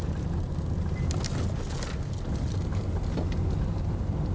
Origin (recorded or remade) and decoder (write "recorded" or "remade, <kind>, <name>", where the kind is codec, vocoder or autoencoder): recorded